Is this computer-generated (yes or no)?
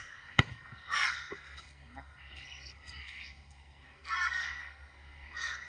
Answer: yes